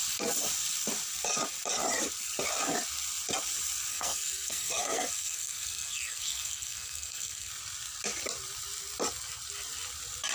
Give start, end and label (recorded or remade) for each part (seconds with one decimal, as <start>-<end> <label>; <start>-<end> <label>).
0.0-3.9 recorded; 3.9-7.5 remade; 7.5-10.3 recorded